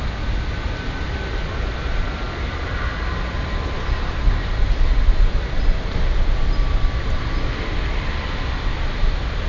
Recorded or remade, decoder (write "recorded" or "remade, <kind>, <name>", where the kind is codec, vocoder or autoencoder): recorded